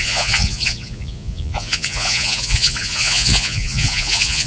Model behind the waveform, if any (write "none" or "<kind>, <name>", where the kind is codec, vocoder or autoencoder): vocoder, Vocos